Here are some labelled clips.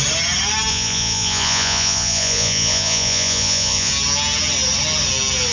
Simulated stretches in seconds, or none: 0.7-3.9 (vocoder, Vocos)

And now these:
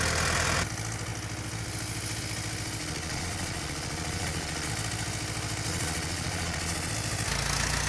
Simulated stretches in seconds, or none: 2.8-4.7 (vocoder, Vocos); 5.7-6.9

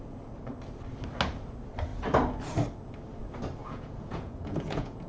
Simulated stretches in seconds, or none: 3.6-5.1 (vocoder, Vocos)